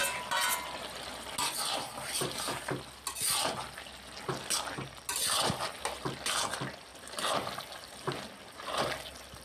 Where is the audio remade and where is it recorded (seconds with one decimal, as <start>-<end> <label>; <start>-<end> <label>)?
0.0-9.4 recorded